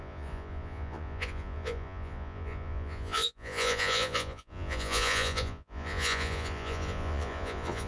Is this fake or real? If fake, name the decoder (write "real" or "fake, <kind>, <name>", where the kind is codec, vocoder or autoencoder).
fake, vocoder, Vocos